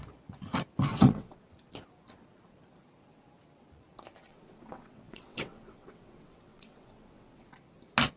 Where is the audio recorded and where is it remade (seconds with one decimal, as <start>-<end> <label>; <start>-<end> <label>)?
0.0-0.9 recorded; 0.9-1.5 remade; 1.5-4.3 recorded; 4.3-7.5 remade; 7.5-8.2 recorded